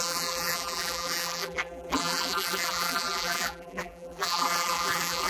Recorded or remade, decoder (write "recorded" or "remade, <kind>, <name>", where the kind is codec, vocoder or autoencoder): remade, vocoder, BigVGAN v2